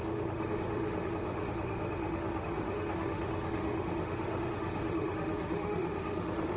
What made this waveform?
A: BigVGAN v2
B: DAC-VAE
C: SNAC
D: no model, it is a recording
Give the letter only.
B